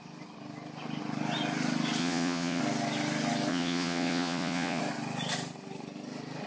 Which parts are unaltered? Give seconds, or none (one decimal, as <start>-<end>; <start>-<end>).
0.0-2.0; 2.6-3.5; 4.8-6.5